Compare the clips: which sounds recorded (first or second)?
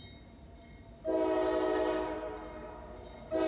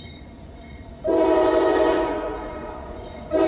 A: first